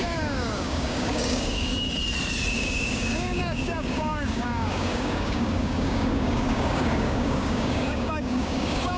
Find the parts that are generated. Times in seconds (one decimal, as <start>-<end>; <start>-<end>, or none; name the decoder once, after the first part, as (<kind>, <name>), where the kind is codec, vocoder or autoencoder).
0.0-1.7 (codec, DAC); 2.5-9.0